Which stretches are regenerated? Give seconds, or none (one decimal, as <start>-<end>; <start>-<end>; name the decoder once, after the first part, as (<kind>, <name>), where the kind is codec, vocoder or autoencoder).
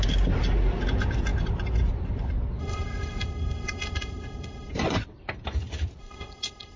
2.6-4.7 (codec, ZipCodec); 6.0-6.8